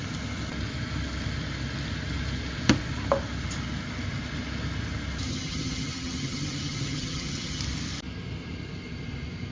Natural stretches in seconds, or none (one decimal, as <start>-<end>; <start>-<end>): 0.0-5.3; 7.6-9.5